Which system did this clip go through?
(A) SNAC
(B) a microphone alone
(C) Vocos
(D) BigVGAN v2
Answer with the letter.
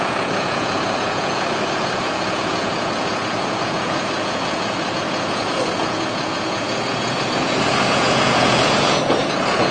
C